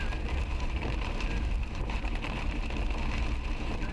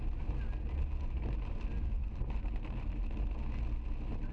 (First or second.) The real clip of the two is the second